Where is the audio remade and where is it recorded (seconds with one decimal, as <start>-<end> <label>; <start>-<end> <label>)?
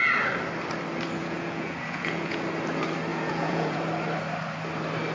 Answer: 0.0-1.2 recorded; 1.2-2.4 remade; 2.4-3.1 recorded; 3.1-3.8 remade; 3.8-5.1 recorded